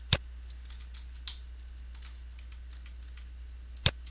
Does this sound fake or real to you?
real